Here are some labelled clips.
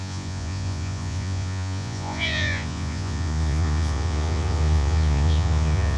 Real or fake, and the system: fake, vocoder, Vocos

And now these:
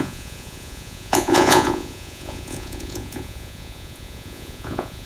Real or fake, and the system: fake, vocoder, Vocos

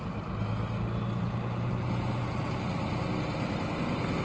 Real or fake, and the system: real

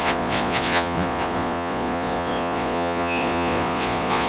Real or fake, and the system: fake, vocoder, Vocos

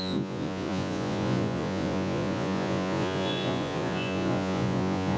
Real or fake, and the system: fake, vocoder, Vocos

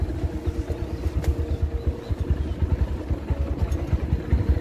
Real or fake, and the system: real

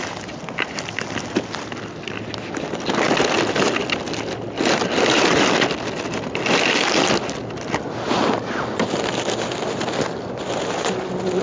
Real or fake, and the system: real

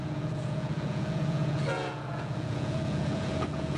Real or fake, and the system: fake, vocoder, Vocos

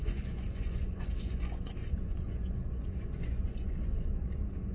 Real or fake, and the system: fake, vocoder, Vocos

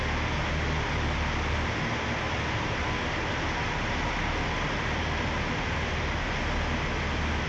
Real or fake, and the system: real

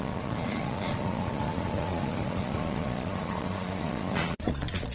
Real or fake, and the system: fake, vocoder, Vocos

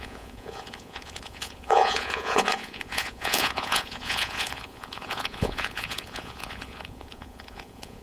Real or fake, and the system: fake, vocoder, Vocos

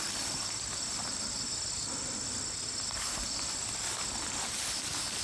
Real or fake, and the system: real